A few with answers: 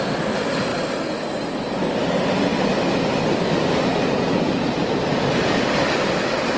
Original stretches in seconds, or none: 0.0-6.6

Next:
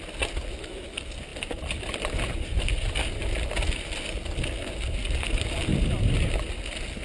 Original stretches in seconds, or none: 0.0-1.3; 3.5-5.7; 6.5-7.0

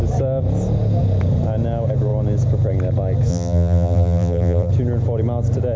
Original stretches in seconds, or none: 0.0-3.3; 4.7-5.8

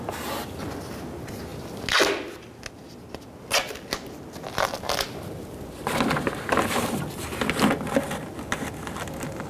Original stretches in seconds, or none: 0.0-9.5

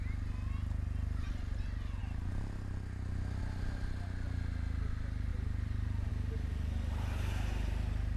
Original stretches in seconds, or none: 0.0-5.3; 6.1-8.2

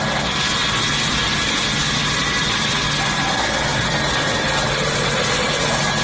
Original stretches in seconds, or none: 0.0-6.0